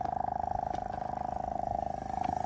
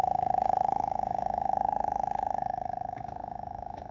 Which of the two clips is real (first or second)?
first